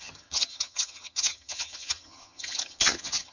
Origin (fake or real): fake